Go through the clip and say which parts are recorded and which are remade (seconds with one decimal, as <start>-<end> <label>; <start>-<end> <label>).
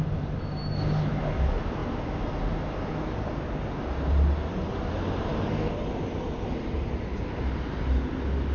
0.0-8.5 recorded